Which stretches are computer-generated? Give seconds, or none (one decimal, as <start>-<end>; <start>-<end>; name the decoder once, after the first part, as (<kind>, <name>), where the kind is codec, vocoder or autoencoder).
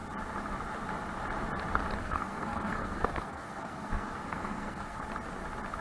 2.0-5.0 (codec, SNAC)